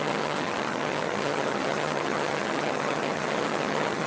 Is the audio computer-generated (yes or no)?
yes